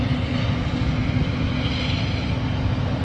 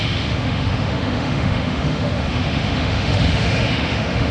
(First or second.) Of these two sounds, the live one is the first